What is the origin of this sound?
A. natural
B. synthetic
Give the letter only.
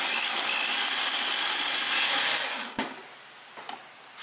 A